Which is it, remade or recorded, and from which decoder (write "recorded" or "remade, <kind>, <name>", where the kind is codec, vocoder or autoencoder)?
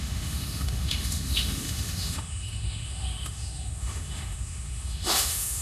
remade, autoencoder, DAC-VAE